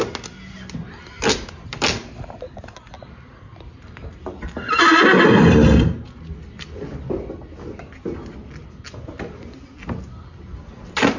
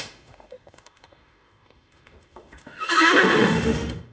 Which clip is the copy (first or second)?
second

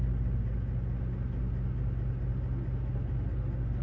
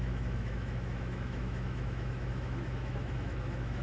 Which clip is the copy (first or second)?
second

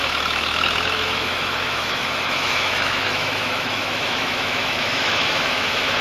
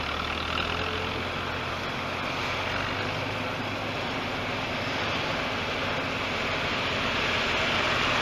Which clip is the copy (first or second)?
first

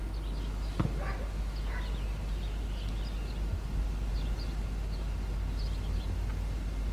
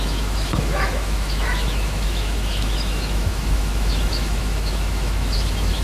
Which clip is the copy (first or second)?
second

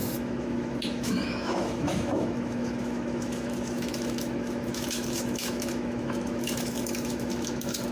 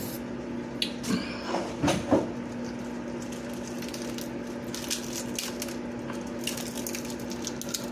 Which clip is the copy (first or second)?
first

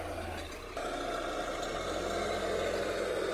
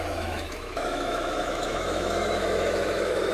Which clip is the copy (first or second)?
second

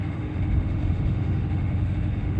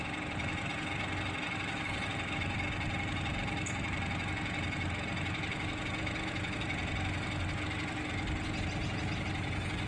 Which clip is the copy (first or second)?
first